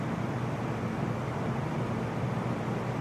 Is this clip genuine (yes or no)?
yes